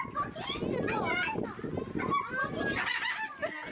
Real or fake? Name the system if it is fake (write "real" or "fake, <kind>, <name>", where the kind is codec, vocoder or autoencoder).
real